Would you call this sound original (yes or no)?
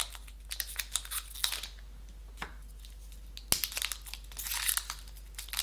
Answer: yes